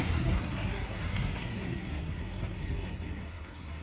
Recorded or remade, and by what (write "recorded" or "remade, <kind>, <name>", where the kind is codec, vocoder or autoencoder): remade, codec, SNAC